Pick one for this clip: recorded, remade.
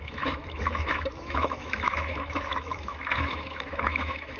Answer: remade